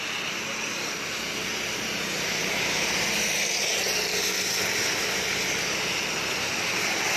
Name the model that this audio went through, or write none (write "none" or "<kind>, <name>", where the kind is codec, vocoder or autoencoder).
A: none